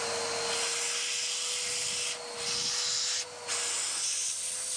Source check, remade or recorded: recorded